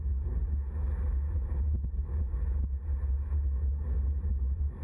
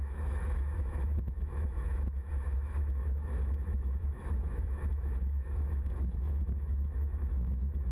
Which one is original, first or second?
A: first